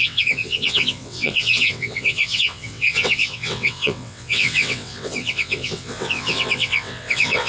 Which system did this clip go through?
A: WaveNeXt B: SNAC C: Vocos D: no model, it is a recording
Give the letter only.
A